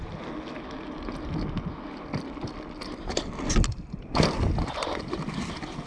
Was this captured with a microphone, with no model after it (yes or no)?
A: yes